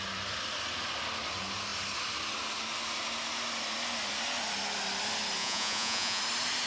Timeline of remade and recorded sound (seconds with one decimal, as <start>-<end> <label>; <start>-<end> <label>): 0.0-5.4 recorded; 5.4-6.2 remade; 6.2-6.7 recorded